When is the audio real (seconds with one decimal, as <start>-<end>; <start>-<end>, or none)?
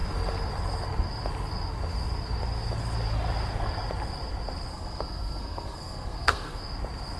0.0-4.7; 6.6-7.2